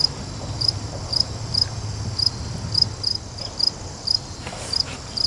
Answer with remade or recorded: remade